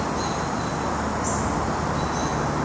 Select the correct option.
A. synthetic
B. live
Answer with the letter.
B